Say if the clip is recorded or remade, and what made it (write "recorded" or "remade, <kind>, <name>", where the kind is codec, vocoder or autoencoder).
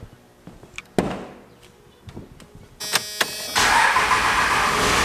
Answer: recorded